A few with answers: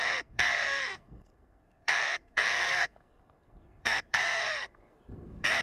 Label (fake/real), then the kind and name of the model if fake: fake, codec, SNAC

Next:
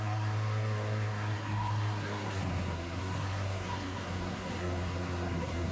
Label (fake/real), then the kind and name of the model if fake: fake, codec, SNAC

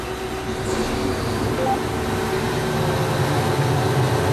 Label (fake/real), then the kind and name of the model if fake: real